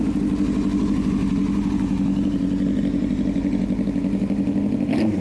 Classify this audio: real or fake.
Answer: real